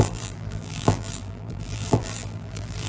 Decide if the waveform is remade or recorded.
remade